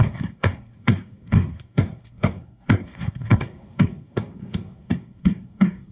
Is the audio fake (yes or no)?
yes